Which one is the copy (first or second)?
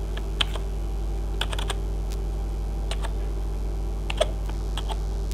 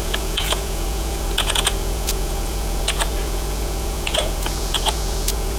second